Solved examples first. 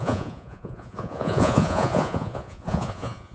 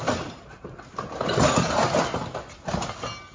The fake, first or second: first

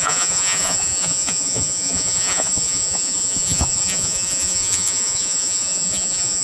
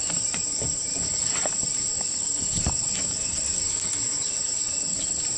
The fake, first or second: first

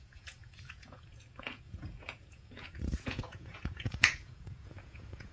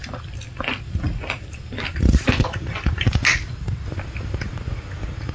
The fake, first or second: first